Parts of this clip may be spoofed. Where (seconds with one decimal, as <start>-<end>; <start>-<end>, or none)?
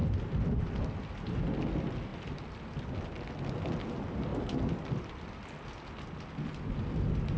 none